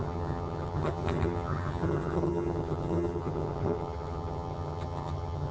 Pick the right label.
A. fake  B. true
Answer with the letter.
A